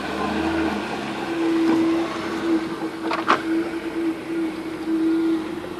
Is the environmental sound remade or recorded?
recorded